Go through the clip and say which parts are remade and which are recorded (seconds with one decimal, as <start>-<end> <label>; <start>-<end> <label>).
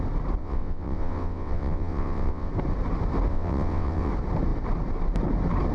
0.0-0.4 recorded; 0.4-2.5 remade; 2.5-3.3 recorded; 3.3-4.1 remade; 4.1-5.7 recorded